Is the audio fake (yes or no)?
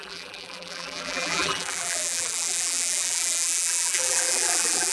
yes